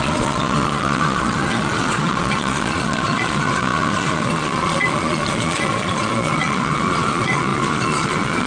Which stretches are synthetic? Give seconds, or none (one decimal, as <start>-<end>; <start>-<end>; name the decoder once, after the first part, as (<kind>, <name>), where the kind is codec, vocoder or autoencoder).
0.0-8.5 (vocoder, Vocos)